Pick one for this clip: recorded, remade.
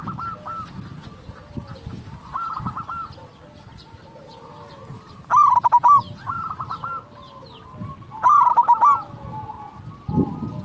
recorded